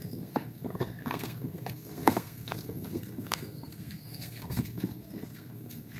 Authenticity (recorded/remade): remade